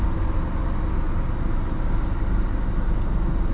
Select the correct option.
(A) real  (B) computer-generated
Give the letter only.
A